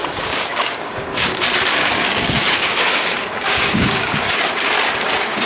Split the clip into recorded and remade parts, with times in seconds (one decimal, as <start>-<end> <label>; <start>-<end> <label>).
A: 0.0-1.4 remade; 1.4-1.8 recorded; 1.8-4.3 remade; 4.3-5.5 recorded